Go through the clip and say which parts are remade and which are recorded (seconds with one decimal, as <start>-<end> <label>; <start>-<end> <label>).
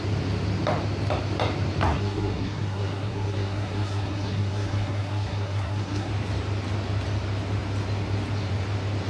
0.0-1.9 recorded; 1.9-6.1 remade; 6.1-9.1 recorded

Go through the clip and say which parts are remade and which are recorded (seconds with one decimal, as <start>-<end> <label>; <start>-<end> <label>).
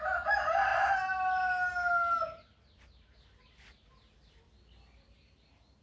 0.0-5.8 recorded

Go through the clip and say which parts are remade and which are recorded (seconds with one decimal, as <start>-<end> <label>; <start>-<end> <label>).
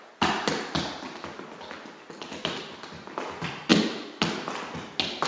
0.0-5.3 recorded